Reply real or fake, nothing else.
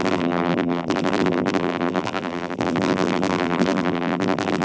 fake